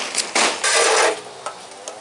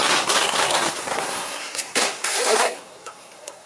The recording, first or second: first